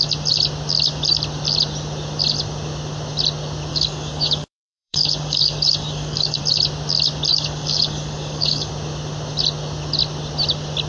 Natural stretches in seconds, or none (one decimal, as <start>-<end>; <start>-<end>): 0.0-3.7; 6.4-7.3; 8.7-10.9